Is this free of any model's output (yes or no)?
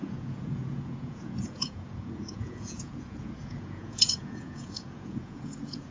no